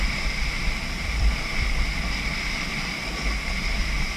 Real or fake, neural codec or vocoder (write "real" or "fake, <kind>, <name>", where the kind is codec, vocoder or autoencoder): fake, vocoder, BigVGAN v2